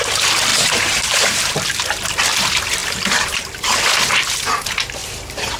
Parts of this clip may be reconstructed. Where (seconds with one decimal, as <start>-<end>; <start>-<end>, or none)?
0.5-1.4; 2.8-3.6